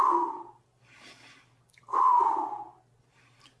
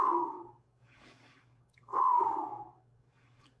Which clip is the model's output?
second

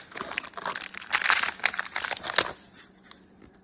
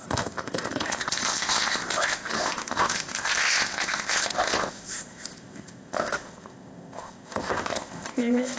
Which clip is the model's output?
second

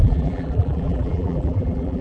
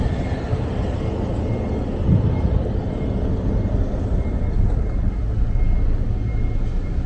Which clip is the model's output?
first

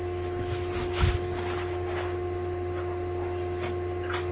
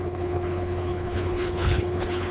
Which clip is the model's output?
second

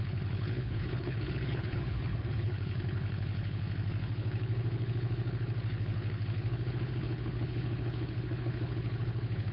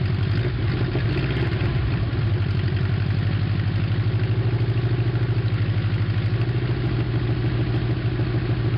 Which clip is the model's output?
first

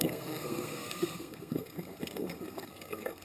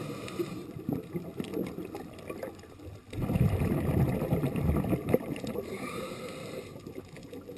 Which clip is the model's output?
first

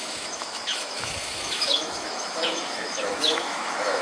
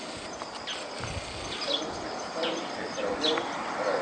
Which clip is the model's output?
first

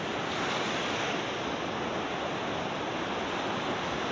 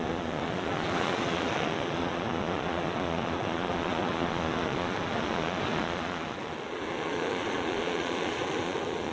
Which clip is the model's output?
second